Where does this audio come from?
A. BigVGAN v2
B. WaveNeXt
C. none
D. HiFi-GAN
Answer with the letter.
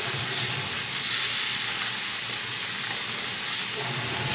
C